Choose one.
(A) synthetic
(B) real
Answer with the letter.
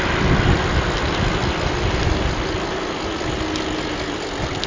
B